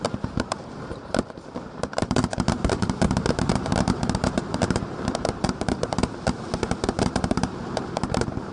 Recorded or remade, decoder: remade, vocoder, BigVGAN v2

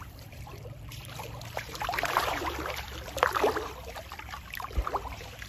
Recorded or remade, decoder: remade, vocoder, BigVGAN v2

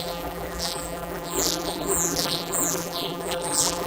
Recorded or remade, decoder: remade, vocoder, BigVGAN v2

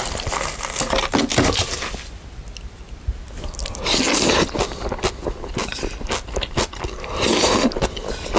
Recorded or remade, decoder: recorded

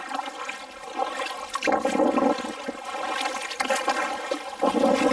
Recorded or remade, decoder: recorded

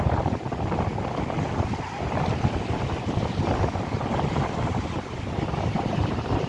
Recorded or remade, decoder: remade, vocoder, BigVGAN v2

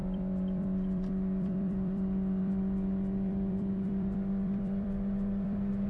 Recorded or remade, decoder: remade, vocoder, BigVGAN v2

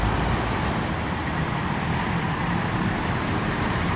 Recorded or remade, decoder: remade, vocoder, BigVGAN v2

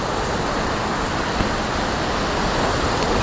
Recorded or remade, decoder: recorded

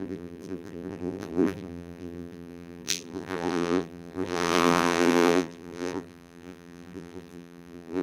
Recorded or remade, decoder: remade, vocoder, BigVGAN v2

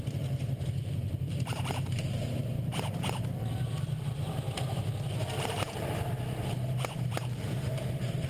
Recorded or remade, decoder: remade, vocoder, BigVGAN v2